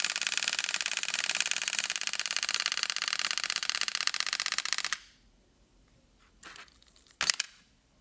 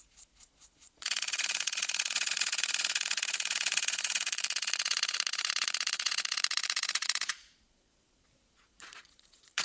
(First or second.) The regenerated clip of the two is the second